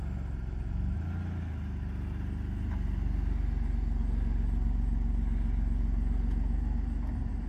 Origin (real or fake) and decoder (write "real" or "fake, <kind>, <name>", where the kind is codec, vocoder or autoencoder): real